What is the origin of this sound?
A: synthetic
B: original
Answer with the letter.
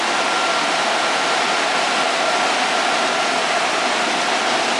B